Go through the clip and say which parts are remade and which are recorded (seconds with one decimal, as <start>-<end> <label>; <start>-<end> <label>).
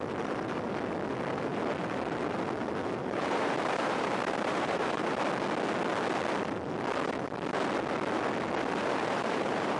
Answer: 0.0-3.0 recorded; 3.0-5.2 remade; 5.2-8.8 recorded; 8.8-9.8 remade